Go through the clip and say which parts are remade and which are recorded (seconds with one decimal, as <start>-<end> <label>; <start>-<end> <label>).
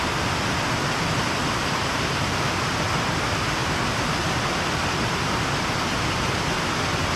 0.0-3.6 recorded; 3.6-6.4 remade; 6.4-7.2 recorded